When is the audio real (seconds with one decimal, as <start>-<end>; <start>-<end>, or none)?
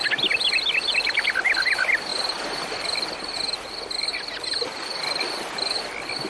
0.0-6.3